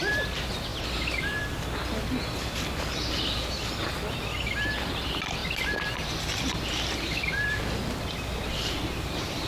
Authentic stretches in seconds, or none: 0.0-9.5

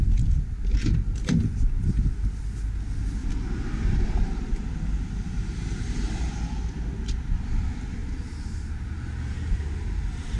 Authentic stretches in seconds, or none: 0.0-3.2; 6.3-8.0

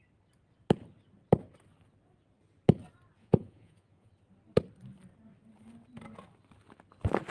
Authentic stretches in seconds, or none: 0.0-3.2; 4.1-7.3

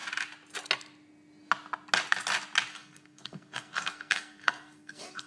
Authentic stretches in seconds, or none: 0.0-2.7